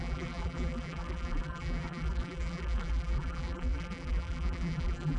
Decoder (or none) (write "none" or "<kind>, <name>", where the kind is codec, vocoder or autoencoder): vocoder, BigVGAN v2